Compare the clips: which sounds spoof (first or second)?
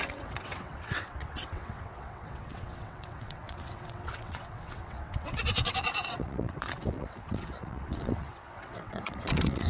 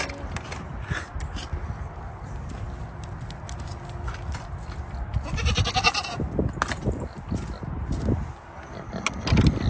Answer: first